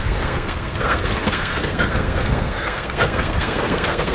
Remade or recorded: remade